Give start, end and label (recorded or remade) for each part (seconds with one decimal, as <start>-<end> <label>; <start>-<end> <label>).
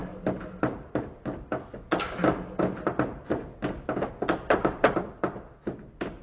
0.0-6.2 recorded